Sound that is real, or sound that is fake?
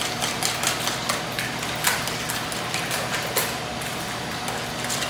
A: real